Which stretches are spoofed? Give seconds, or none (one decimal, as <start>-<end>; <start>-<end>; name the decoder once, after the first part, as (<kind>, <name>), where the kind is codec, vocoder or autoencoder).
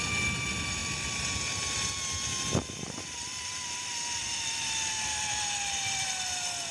none